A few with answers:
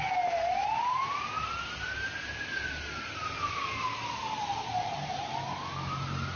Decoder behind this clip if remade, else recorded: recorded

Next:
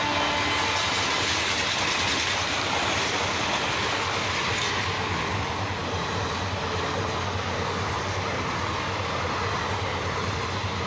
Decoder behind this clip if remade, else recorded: recorded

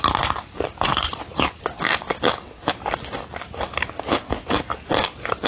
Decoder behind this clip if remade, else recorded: recorded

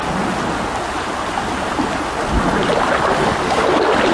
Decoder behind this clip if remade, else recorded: recorded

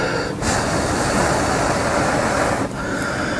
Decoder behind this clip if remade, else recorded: recorded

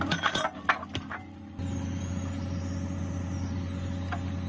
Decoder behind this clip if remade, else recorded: recorded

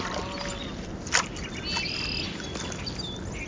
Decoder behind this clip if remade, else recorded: recorded